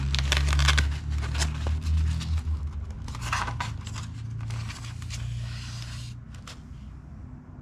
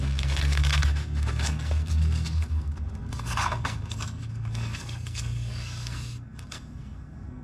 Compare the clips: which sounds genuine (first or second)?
first